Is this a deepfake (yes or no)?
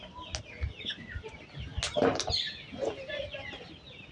no